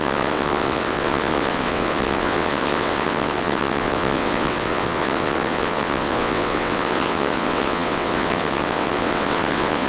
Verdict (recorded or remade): remade